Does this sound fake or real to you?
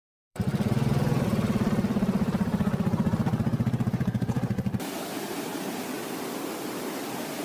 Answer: fake